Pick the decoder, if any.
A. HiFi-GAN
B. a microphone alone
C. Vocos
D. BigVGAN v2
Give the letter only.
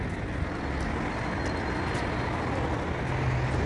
B